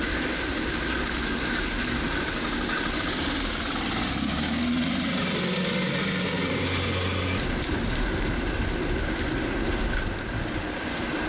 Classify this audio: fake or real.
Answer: real